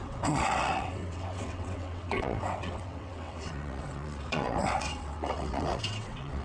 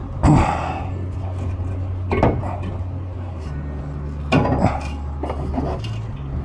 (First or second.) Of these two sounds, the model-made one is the first